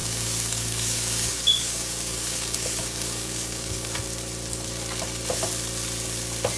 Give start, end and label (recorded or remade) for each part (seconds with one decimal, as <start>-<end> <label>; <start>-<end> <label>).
0.0-4.0 remade; 4.0-6.6 recorded